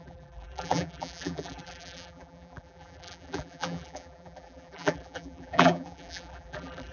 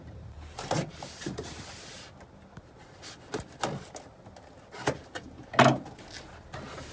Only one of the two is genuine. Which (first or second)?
second